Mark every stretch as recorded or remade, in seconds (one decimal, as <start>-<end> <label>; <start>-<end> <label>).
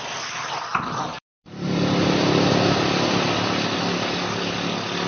0.0-0.7 recorded; 0.7-3.8 remade; 3.8-5.1 recorded